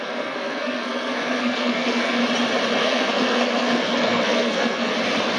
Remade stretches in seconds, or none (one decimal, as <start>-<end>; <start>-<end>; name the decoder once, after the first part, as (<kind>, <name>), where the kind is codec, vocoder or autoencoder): 0.0-2.2 (codec, SNAC); 2.8-4.9